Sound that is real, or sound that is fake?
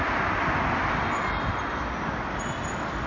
real